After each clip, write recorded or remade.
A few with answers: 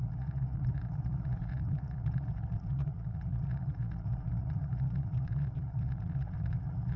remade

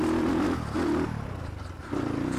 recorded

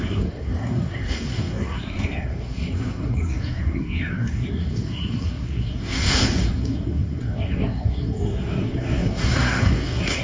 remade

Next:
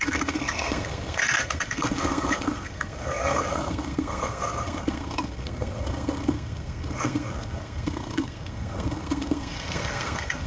remade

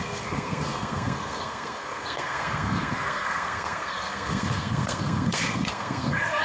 remade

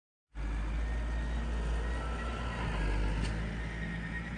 recorded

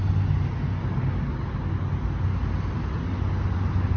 recorded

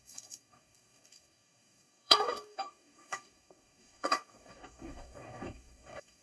remade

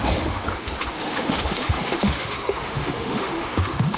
remade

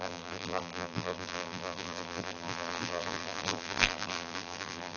remade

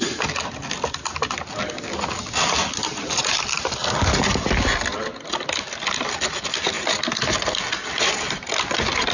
recorded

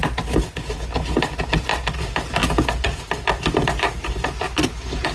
recorded